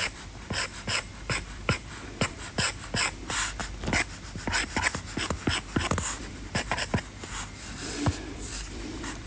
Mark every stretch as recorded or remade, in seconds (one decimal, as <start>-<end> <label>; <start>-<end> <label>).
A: 0.0-3.6 remade; 3.6-6.2 recorded; 6.2-7.0 remade; 7.0-7.8 recorded; 7.8-9.3 remade